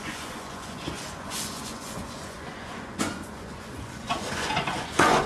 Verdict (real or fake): fake